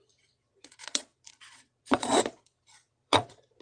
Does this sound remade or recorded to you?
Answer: remade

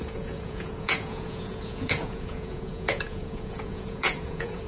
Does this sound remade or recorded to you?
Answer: remade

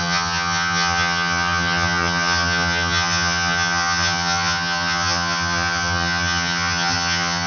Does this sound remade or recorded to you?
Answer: remade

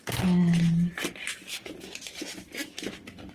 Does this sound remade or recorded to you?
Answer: recorded